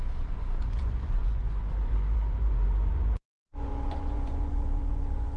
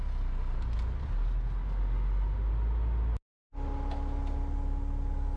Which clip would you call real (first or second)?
second